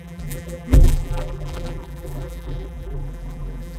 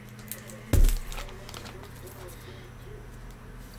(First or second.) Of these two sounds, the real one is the second